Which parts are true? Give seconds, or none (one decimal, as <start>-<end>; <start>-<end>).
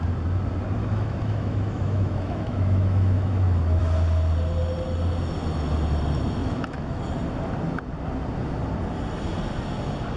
0.0-0.8; 3.8-6.4; 7.0-10.2